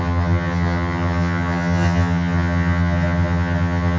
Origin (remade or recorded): remade